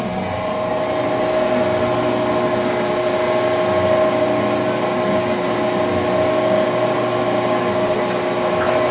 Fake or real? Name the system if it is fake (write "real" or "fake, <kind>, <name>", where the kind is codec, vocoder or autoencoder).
real